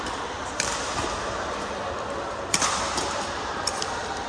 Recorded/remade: remade